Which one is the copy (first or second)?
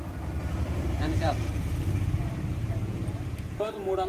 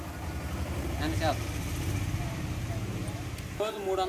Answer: first